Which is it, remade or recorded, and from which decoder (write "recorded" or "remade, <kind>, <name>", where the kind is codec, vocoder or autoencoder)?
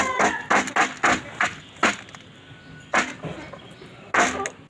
recorded